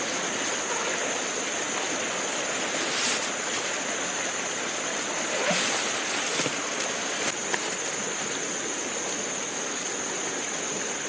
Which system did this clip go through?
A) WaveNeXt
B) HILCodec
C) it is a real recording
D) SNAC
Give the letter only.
C